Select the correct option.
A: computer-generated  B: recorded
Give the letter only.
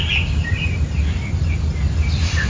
B